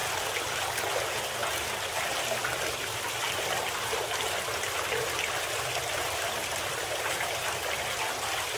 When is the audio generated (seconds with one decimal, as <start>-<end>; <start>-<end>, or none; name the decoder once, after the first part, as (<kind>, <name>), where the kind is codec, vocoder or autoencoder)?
6.7-7.4 (vocoder, BigVGAN v2)